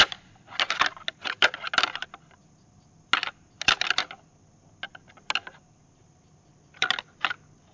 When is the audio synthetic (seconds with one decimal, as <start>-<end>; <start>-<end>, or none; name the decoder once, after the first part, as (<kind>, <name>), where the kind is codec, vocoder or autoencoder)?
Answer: none